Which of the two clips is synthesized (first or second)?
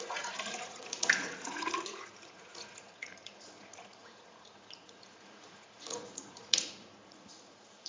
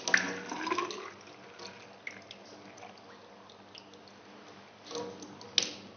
first